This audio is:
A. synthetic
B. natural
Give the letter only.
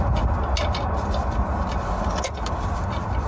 B